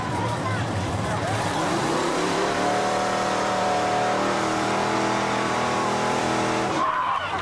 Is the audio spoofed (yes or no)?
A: yes